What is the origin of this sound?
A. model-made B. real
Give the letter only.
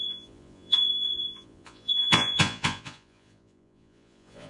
A